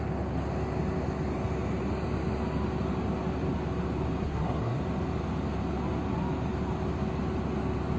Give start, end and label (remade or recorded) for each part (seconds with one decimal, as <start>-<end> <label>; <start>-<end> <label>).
0.0-4.2 recorded; 4.2-4.8 remade; 4.8-8.0 recorded

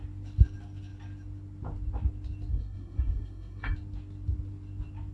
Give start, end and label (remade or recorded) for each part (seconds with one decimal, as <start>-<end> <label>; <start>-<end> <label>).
0.0-2.5 recorded; 2.5-3.7 remade; 3.7-5.1 recorded

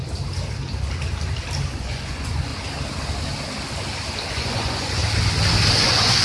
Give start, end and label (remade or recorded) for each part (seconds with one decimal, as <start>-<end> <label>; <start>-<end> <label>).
0.0-1.7 recorded; 1.7-2.5 remade; 2.5-4.3 recorded; 4.3-5.0 remade; 5.0-5.8 recorded; 5.8-6.2 remade

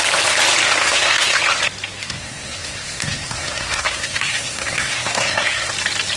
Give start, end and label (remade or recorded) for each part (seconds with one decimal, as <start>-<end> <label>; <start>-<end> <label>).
0.0-0.8 recorded; 0.8-1.4 remade; 1.4-2.0 recorded; 2.0-5.7 remade; 5.7-6.2 recorded

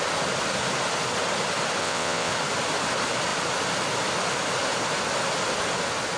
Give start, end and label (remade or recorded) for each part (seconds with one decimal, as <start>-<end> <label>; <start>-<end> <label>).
0.0-1.8 recorded; 1.8-2.3 remade; 2.3-6.2 recorded

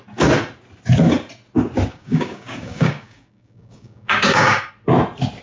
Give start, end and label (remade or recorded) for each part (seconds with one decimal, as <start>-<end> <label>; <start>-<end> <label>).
0.0-1.9 recorded; 1.9-4.7 remade; 4.7-5.4 recorded

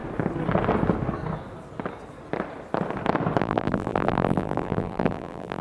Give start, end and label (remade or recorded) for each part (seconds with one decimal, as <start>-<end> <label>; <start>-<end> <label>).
0.0-3.4 recorded; 3.4-5.6 remade

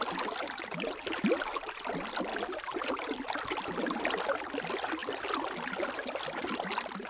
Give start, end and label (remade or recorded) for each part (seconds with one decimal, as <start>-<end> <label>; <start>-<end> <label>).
0.0-7.1 recorded